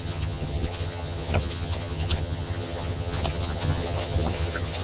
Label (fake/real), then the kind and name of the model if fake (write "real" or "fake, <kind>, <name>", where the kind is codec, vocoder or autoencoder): fake, vocoder, HiFi-GAN